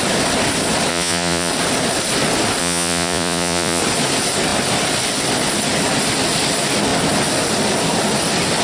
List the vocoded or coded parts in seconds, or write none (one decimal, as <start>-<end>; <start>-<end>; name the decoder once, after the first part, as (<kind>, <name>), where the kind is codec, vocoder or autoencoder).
0.9-1.5 (vocoder, Vocos); 2.6-3.8